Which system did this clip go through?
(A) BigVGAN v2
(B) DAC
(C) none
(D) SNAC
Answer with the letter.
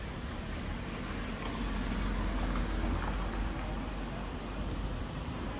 C